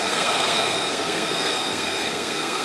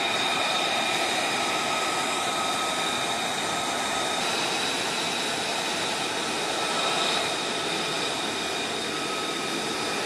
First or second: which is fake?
first